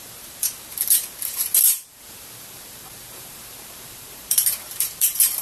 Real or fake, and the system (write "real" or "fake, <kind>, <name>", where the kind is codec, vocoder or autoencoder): fake, vocoder, BigVGAN v2